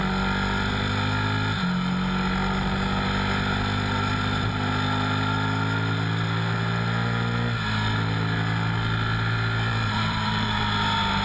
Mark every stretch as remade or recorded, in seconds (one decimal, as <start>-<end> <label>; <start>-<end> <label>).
0.0-9.7 recorded; 9.7-10.6 remade; 10.6-11.2 recorded